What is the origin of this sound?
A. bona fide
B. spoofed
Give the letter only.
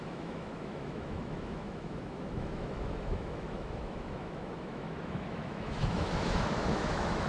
B